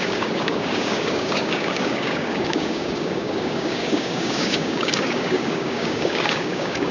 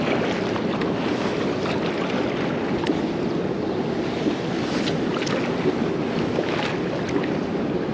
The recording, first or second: second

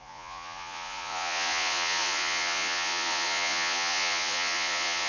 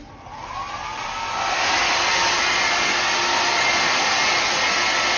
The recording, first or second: second